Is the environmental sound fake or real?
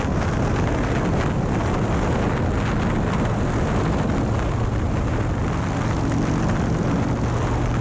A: real